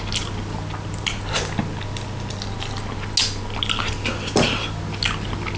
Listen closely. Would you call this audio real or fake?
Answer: real